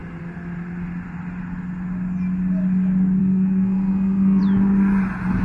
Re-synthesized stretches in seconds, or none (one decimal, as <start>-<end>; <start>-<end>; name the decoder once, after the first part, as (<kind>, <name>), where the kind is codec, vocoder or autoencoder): 3.2-4.4 (codec, SNAC)